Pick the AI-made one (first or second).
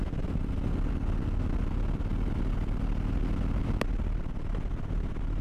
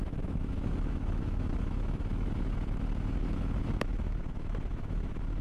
second